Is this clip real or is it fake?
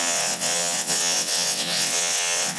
fake